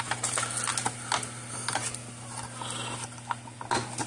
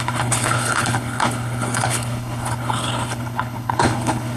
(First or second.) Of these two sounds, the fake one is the second